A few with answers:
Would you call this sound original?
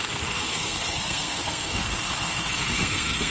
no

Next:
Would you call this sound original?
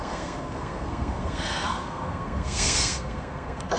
no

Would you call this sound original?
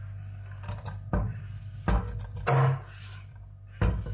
yes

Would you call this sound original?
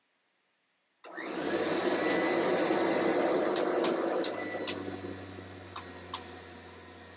yes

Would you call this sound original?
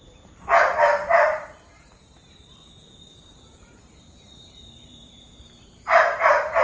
no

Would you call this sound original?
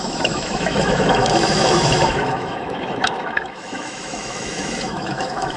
no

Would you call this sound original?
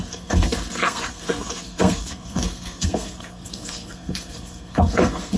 no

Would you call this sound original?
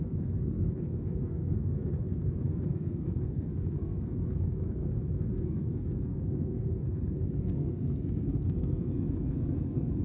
no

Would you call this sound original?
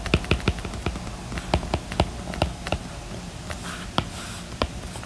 yes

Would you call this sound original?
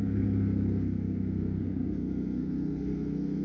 no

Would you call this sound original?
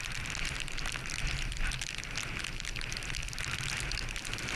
yes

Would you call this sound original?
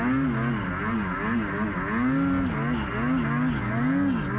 yes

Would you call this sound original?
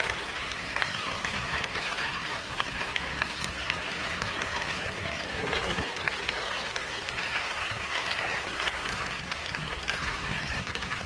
no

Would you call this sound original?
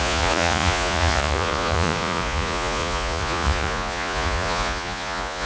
no